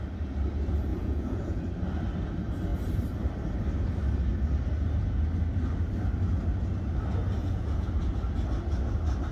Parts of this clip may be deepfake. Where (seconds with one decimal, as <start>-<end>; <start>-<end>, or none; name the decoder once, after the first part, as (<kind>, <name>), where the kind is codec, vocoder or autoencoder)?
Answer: 0.9-1.6 (vocoder, Vocos); 7.4-7.9